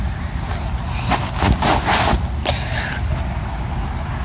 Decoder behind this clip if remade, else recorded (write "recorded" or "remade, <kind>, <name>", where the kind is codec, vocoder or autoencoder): recorded